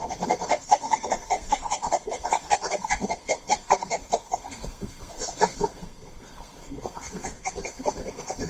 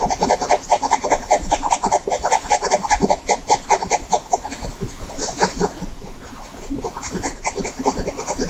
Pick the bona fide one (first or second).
second